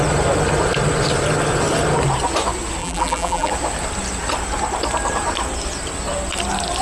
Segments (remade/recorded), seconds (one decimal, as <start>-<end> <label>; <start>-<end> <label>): 0.0-2.8 recorded; 2.8-3.5 remade; 3.5-6.8 recorded